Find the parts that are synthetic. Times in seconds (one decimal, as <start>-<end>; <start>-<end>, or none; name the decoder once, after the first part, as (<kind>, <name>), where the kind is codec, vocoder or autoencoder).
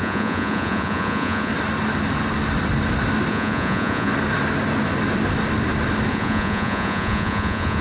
0.0-1.5 (vocoder, Vocos); 3.3-4.1; 6.1-7.8